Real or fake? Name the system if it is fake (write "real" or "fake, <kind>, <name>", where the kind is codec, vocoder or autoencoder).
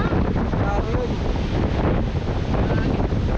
real